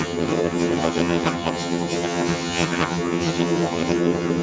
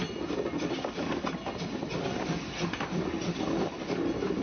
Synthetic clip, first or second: first